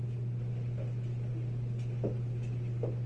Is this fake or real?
real